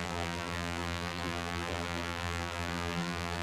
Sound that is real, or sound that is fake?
fake